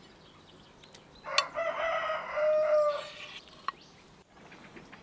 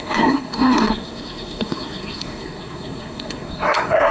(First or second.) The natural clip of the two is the first